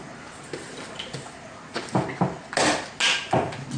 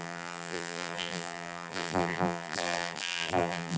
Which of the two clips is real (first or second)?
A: first